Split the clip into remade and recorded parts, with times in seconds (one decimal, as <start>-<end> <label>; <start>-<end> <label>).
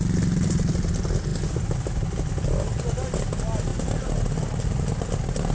0.0-1.3 recorded; 1.3-2.3 remade; 2.3-5.5 recorded